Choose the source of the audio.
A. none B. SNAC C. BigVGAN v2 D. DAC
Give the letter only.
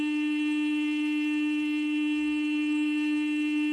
B